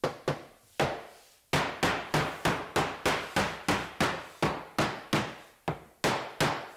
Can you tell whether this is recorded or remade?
recorded